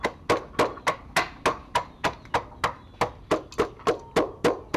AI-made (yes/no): no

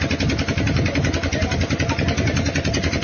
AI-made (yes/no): no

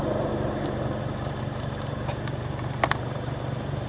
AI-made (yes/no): no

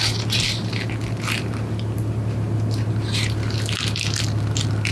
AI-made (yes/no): no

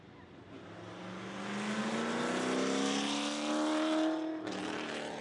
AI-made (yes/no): no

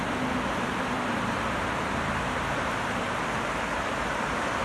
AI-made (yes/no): yes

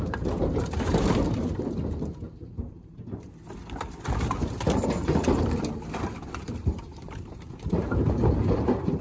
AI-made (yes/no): yes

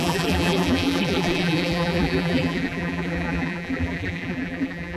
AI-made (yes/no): yes